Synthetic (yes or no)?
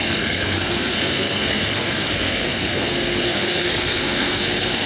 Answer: yes